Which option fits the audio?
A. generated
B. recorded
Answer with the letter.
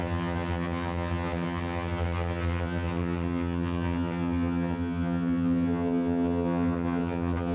A